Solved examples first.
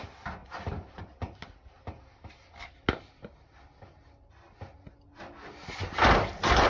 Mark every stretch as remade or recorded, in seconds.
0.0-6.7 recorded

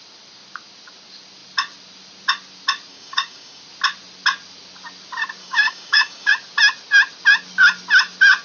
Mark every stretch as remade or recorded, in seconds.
0.0-2.9 recorded; 2.9-3.6 remade; 3.6-5.4 recorded; 5.4-6.3 remade; 6.3-8.4 recorded

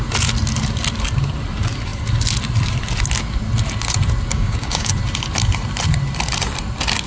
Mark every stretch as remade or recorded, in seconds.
0.0-4.3 recorded; 4.3-4.9 remade; 4.9-7.1 recorded

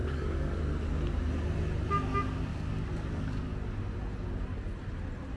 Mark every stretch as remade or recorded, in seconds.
0.0-0.6 remade; 0.6-2.5 recorded; 2.5-3.8 remade; 3.8-5.4 recorded

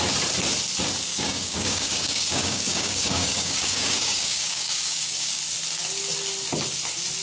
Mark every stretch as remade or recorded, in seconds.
0.0-1.1 recorded; 1.1-5.4 remade; 5.4-7.2 recorded

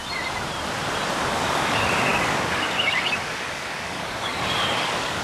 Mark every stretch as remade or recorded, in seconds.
0.0-1.1 recorded; 1.1-5.2 remade